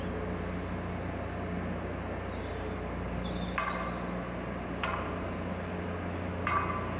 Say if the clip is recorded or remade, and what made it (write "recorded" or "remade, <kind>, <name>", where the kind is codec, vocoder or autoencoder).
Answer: recorded